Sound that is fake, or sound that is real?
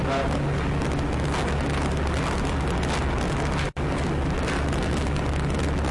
real